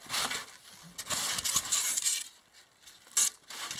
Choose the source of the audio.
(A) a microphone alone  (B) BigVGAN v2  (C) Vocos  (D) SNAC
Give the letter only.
A